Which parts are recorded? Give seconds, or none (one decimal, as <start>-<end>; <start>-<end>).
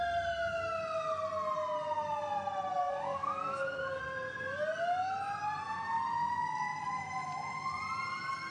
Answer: 0.0-2.8; 4.0-8.5